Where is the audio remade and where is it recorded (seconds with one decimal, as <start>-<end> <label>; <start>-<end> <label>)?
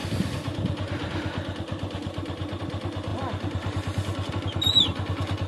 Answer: 0.0-5.5 recorded